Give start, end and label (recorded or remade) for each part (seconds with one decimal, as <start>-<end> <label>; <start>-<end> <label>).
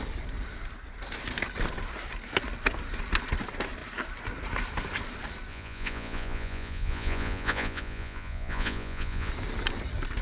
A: 0.0-5.5 recorded; 5.5-9.3 remade; 9.3-10.2 recorded